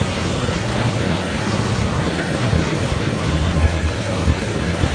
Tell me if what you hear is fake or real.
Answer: fake